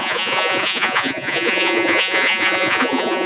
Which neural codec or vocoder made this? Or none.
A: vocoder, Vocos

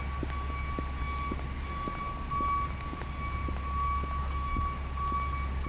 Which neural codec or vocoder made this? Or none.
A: none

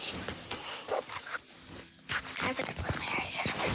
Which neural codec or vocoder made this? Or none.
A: none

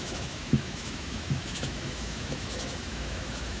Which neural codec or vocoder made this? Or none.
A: autoencoder, DAC-VAE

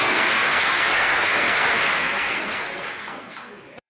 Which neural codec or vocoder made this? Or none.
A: codec, SNAC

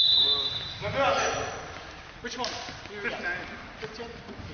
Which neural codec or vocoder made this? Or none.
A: none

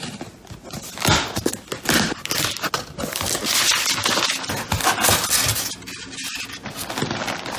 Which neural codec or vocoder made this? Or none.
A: none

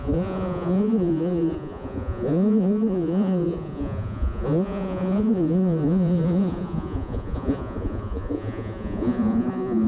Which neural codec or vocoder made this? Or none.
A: vocoder, Vocos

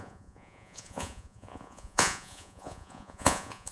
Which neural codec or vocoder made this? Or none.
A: vocoder, Vocos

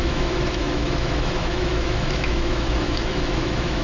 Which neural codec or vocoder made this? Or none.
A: autoencoder, DAC-VAE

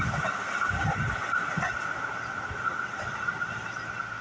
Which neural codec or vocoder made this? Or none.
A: none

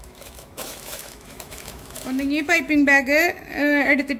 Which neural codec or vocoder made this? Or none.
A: autoencoder, DAC-VAE